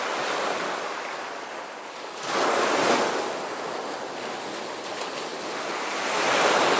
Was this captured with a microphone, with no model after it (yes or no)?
yes